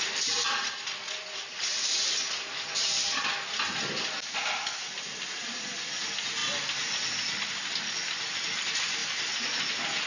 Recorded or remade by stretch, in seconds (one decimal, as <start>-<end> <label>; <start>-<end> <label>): 0.0-10.1 recorded